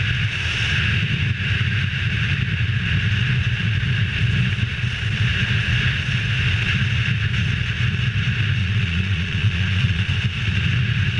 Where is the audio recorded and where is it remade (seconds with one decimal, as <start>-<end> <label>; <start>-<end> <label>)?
0.0-8.6 recorded; 8.6-10.1 remade; 10.1-11.2 recorded